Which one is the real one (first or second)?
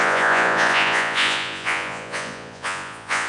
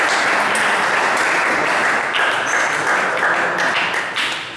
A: second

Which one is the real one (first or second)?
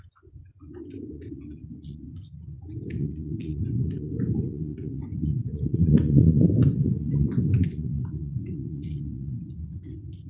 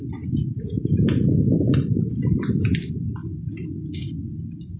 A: second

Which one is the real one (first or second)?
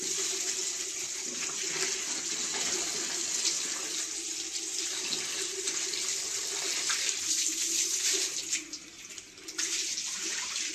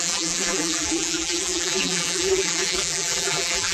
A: first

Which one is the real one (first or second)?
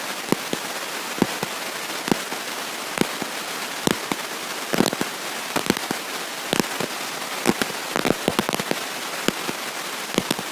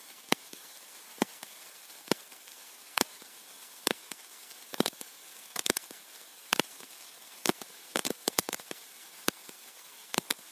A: first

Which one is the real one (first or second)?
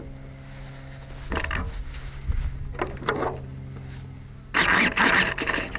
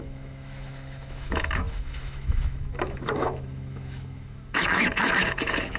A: first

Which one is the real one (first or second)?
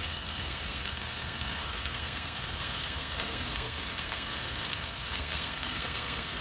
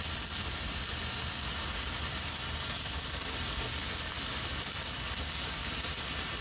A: second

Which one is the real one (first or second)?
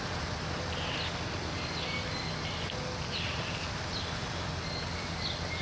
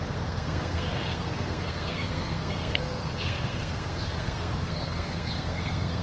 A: first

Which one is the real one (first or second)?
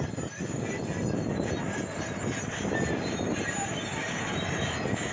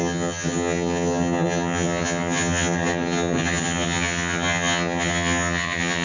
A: first